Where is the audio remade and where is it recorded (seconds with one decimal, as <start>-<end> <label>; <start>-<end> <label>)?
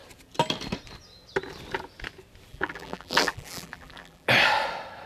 0.0-2.5 recorded; 2.5-4.3 remade; 4.3-5.1 recorded